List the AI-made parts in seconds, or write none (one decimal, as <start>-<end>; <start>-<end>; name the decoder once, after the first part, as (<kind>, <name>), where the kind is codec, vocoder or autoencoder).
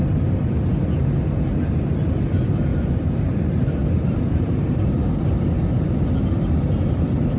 2.7-4.8 (vocoder, BigVGAN v2)